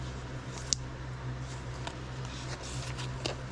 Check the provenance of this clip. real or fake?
real